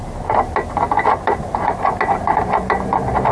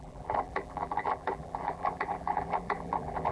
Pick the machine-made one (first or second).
second